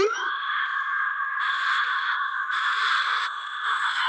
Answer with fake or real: real